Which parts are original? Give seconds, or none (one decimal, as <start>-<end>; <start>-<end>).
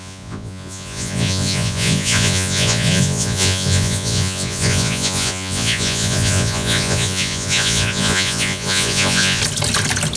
9.4-10.2